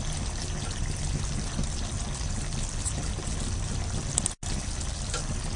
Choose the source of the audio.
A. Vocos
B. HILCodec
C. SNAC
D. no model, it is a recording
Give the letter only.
D